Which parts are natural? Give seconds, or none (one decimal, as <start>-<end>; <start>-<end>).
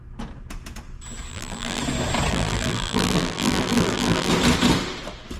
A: 0.0-1.3; 1.8-2.3; 4.3-5.4